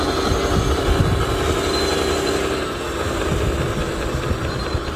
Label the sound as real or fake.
real